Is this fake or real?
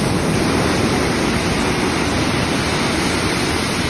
real